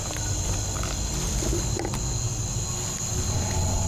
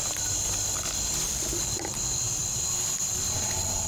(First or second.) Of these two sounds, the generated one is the second